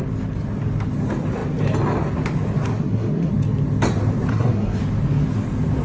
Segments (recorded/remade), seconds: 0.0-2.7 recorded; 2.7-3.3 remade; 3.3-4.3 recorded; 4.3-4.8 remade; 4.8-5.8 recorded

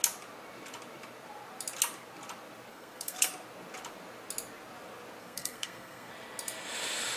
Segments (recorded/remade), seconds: 0.0-2.7 recorded; 2.7-3.3 remade; 3.3-5.2 recorded; 5.2-6.1 remade; 6.1-7.2 recorded

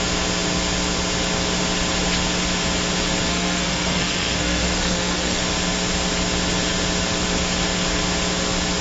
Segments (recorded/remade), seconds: 0.0-3.3 recorded; 3.3-5.4 remade; 5.4-8.8 recorded

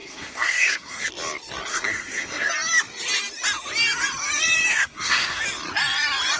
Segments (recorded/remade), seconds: 0.0-1.1 remade; 1.1-1.7 recorded; 1.7-2.5 remade; 2.5-4.7 recorded; 4.7-5.4 remade; 5.4-6.4 recorded

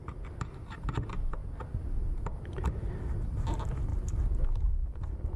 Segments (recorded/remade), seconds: 0.0-5.4 recorded

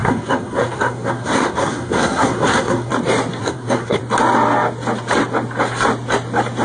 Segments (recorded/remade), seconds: 0.0-2.9 remade; 2.9-3.4 recorded; 3.4-4.0 remade; 4.0-6.6 recorded

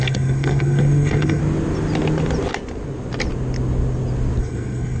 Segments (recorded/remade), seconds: 0.0-1.4 remade; 1.4-4.4 recorded; 4.4-5.0 remade